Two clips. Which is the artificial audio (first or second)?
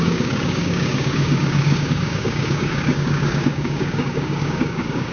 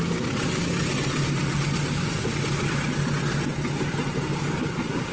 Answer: first